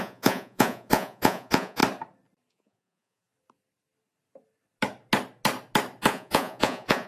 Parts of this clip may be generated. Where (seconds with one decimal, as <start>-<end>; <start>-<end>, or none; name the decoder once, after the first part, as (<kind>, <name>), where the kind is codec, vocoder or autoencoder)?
0.0-1.8 (vocoder, Vocos); 2.5-3.3; 6.1-7.1